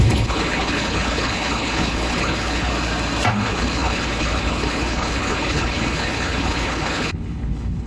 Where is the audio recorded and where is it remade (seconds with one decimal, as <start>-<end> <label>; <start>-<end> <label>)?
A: 0.0-2.7 remade; 2.7-3.3 recorded; 3.3-7.9 remade